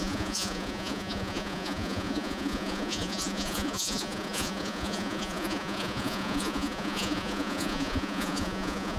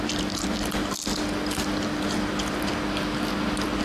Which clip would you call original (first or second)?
second